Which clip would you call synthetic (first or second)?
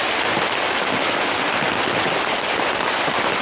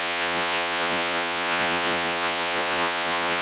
second